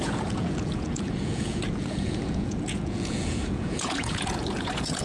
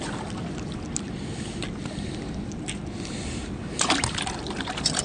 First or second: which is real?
second